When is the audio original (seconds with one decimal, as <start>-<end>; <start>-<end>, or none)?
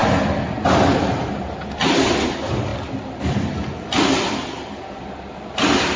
0.0-6.0